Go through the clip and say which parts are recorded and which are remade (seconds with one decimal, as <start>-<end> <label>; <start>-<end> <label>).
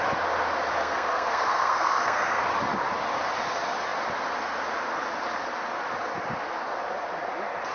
0.0-0.8 recorded; 0.8-2.4 remade; 2.4-7.7 recorded